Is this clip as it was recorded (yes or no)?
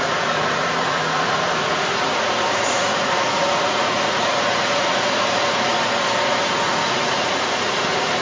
no